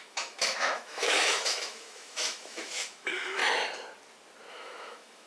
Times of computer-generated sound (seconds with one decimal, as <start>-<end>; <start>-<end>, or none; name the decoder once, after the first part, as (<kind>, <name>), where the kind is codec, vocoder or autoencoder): 0.0-3.4 (autoencoder, DAC-VAE); 4.5-5.3